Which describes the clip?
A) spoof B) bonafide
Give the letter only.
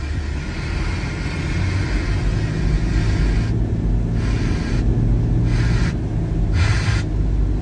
B